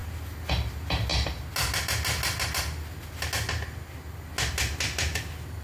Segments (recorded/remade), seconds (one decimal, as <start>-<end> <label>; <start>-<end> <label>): 0.0-5.6 recorded